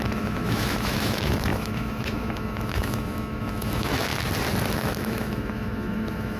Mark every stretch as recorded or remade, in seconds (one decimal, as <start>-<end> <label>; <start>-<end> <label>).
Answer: 0.0-4.1 remade; 4.1-4.7 recorded; 4.7-6.4 remade